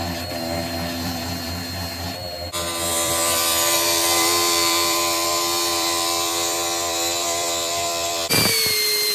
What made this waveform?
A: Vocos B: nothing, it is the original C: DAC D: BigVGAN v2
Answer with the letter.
D